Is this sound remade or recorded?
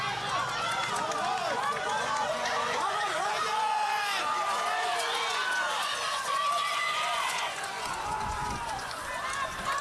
remade